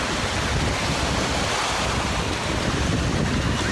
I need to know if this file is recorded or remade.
recorded